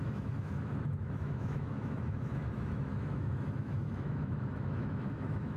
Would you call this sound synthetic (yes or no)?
yes